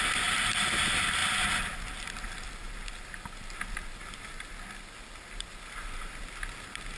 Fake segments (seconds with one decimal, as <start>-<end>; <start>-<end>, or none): none